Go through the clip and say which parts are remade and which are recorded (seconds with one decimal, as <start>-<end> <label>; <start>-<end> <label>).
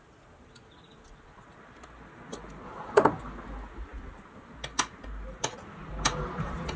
0.0-6.8 recorded